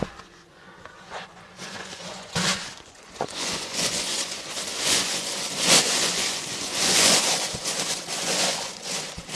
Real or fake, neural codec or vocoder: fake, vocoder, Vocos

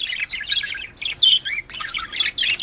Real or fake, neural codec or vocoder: real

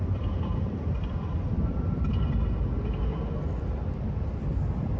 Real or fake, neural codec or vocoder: real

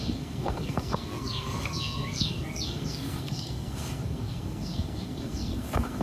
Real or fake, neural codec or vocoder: fake, codec, SNAC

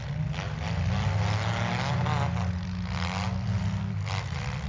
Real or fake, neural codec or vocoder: real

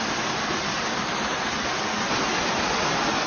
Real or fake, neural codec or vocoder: real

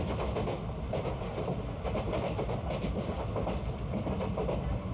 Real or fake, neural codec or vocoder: real